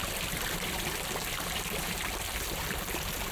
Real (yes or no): no